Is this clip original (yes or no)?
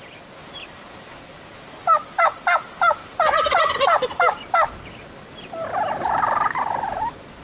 yes